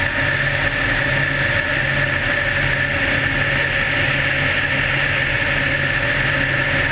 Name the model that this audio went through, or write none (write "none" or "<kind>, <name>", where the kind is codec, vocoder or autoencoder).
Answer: none